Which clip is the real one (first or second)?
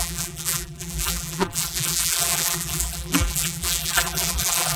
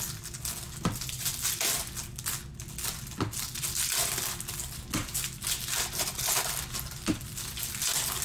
second